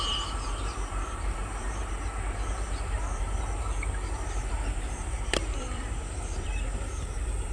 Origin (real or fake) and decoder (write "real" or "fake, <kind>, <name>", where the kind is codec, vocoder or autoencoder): fake, vocoder, BigVGAN v2